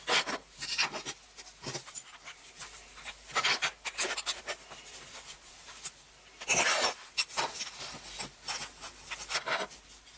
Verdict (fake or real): real